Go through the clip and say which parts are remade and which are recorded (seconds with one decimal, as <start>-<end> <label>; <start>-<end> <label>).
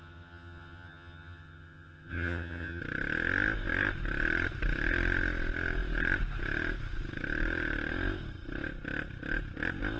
0.0-2.8 remade; 2.8-10.0 recorded